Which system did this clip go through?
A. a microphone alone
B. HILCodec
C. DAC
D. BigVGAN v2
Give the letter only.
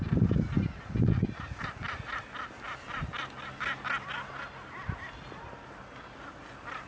A